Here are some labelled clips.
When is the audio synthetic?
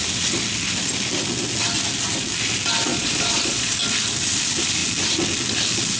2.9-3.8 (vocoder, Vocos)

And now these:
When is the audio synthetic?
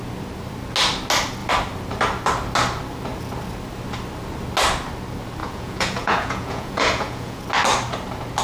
5.4-7.4 (vocoder, Vocos)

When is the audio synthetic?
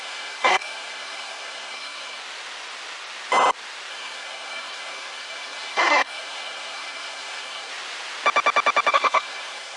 0.0-2.2 (codec, SNAC); 3.9-7.7; 8.9-9.8